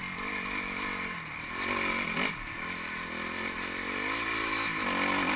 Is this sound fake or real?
real